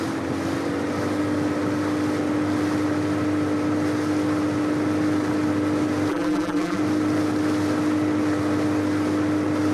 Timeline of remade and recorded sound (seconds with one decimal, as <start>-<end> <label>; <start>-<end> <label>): 0.0-6.1 recorded; 6.1-6.8 remade; 6.8-9.7 recorded